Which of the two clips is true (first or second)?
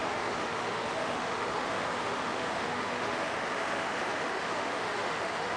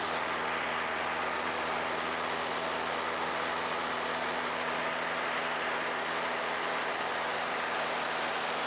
second